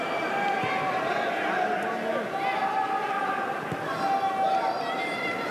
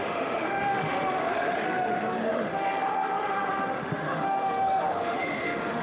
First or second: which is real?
first